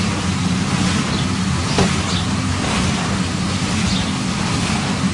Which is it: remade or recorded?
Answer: recorded